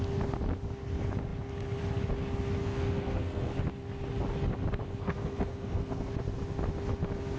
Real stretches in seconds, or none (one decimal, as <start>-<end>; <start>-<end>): 0.0-2.6; 3.6-5.0; 6.1-7.4